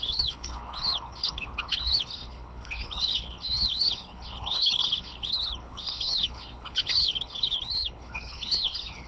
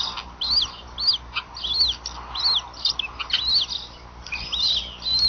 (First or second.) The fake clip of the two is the first